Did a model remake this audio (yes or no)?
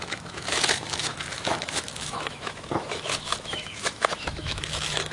yes